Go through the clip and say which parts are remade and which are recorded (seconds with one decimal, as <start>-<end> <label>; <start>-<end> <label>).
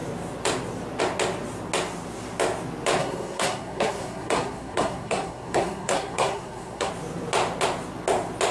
0.0-3.0 recorded; 3.0-6.9 remade; 6.9-8.5 recorded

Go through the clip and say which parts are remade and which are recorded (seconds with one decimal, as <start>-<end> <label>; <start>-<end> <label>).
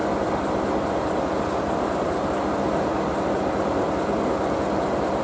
0.0-5.2 recorded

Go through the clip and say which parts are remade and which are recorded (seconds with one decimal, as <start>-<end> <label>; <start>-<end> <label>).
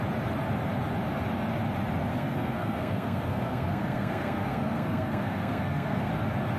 0.0-2.1 recorded; 2.1-6.1 remade; 6.1-6.6 recorded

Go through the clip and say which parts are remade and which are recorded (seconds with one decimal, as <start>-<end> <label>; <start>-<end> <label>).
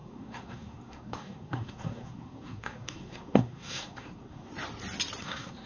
0.0-4.5 remade; 4.5-5.2 recorded; 5.2-5.7 remade